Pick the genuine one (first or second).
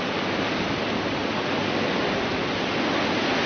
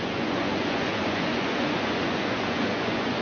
first